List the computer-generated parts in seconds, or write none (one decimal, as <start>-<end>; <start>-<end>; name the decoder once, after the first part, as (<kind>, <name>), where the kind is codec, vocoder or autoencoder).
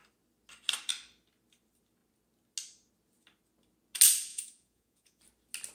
4.3-5.2 (vocoder, Vocos)